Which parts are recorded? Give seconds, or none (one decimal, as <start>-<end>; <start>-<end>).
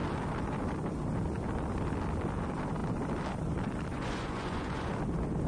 0.0-3.9; 4.9-5.5